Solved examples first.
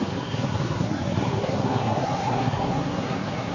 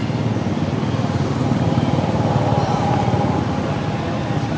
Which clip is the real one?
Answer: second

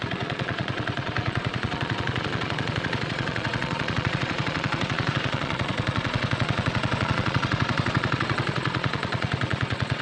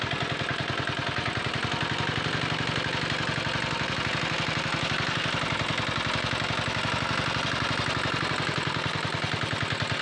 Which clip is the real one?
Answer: second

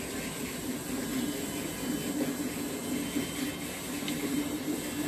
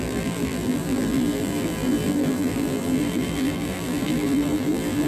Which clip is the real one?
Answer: first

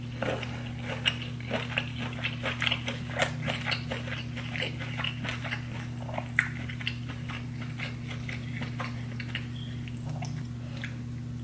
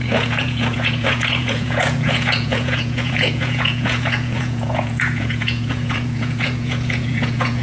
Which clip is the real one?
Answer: first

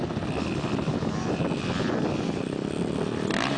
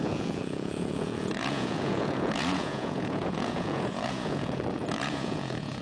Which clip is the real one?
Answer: first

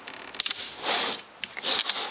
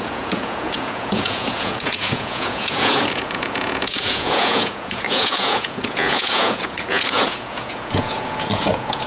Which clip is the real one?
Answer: first